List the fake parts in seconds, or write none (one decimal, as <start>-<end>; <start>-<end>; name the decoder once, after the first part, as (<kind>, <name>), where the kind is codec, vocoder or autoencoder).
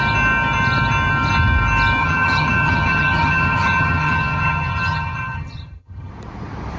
2.0-6.1 (vocoder, HiFi-GAN)